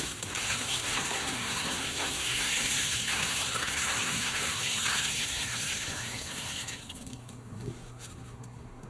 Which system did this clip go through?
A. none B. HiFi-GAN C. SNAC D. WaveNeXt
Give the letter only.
C